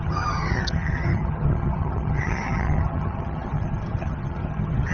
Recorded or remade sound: remade